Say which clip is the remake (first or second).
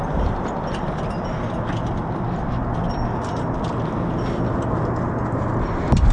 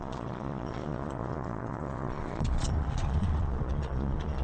second